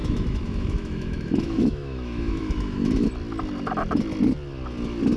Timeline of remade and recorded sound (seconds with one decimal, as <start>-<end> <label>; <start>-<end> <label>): 0.0-3.1 remade; 3.1-5.2 recorded